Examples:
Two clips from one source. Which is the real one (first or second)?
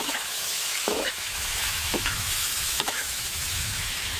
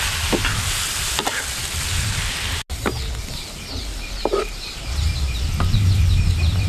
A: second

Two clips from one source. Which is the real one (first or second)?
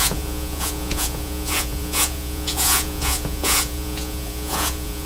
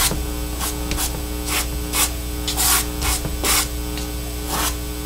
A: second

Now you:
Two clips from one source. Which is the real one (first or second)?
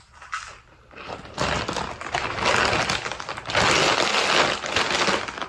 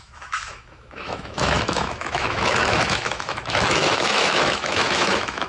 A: first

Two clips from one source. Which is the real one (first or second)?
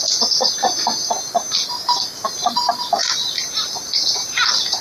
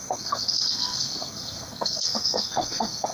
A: first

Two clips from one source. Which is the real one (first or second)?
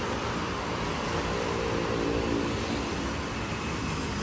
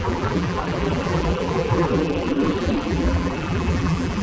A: first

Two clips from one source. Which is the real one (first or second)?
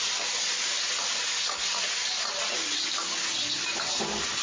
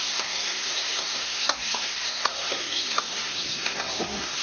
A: first